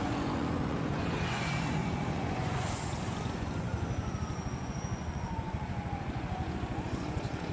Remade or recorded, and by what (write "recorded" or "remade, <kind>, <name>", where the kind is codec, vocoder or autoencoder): remade, vocoder, Vocos